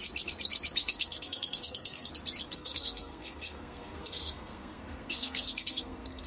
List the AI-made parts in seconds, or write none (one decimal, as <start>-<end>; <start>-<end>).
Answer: 0.8-2.1; 2.5-6.3